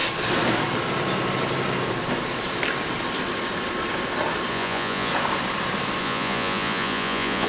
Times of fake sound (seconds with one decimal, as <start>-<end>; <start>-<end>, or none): 4.5-5.1; 6.0-7.5